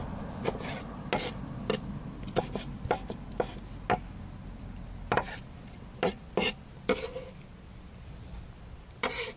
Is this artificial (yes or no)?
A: no